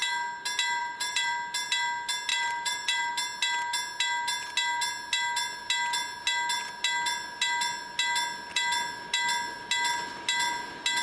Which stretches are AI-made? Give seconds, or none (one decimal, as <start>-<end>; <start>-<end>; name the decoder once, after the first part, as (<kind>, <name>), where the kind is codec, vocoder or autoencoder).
0.8-1.3 (vocoder, BigVGAN v2); 2.3-3.1